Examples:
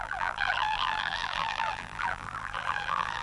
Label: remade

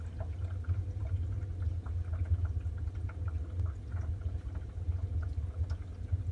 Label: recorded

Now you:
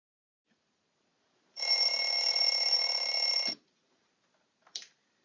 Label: remade